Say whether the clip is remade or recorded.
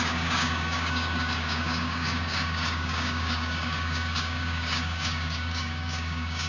remade